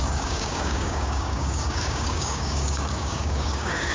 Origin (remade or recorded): remade